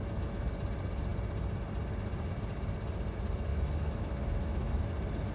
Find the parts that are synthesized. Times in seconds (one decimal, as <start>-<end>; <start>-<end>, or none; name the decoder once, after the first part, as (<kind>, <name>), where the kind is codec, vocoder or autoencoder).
3.5-4.8 (autoencoder, DAC-VAE)